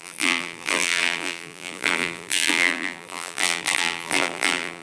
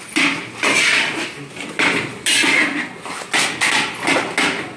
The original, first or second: second